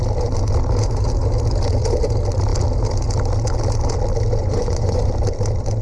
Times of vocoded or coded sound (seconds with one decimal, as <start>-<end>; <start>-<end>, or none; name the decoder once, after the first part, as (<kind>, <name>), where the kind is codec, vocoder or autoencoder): 4.4-5.1 (vocoder, Vocos)